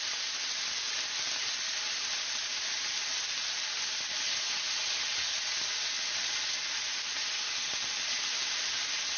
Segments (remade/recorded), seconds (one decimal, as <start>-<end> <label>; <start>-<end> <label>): 0.0-9.2 recorded